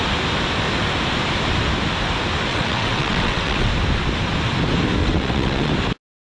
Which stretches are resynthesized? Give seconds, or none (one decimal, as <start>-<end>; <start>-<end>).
2.5-3.7; 5.0-5.7